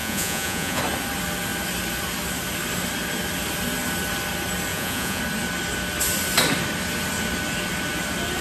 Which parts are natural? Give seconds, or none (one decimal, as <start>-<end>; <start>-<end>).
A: 0.8-4.7; 5.2-8.4